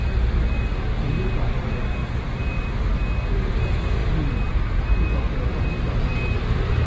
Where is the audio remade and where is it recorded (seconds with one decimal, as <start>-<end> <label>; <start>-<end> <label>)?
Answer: 0.0-6.9 recorded